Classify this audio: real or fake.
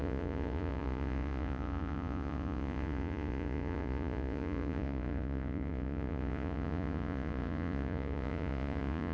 fake